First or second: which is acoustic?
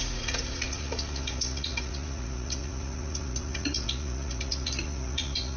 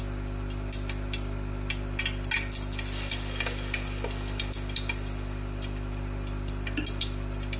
second